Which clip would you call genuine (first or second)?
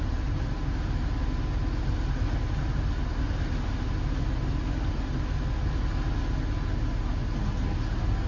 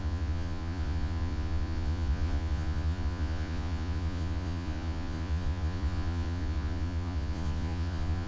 first